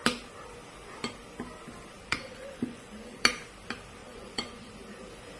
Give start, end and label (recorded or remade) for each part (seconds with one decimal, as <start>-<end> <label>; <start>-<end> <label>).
0.0-2.0 recorded; 2.0-3.2 remade; 3.2-4.0 recorded; 4.0-4.7 remade; 4.7-5.4 recorded